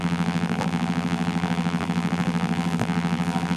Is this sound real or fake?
fake